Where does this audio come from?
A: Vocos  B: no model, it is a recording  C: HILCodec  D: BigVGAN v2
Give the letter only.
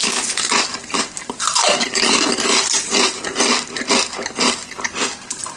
B